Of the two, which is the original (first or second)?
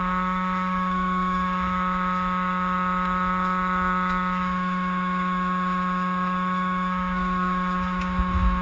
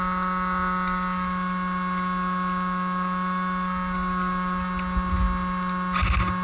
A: second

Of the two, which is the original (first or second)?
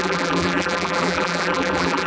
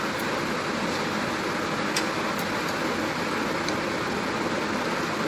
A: second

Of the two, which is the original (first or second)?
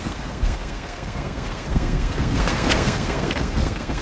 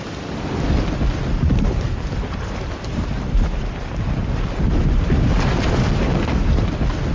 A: second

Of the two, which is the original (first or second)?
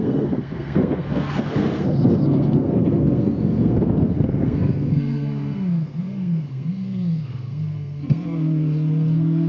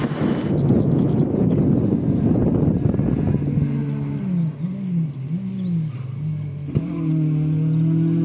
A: second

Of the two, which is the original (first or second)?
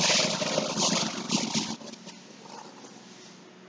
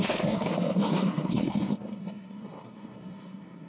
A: first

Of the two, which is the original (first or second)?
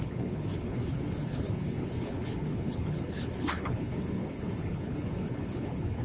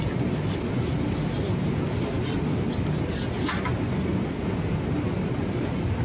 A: second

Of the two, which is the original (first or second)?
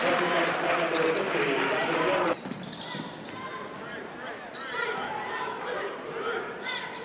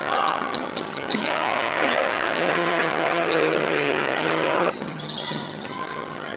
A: first